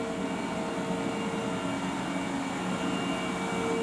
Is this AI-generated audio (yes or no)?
no